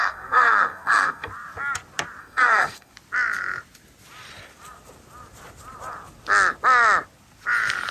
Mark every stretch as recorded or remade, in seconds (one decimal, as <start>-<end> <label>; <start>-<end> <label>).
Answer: 0.0-1.3 remade; 1.3-2.2 recorded; 2.2-2.9 remade; 2.9-7.9 recorded